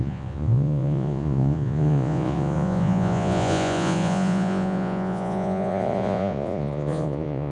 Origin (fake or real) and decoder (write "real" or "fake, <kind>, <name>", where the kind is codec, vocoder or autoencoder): fake, vocoder, Vocos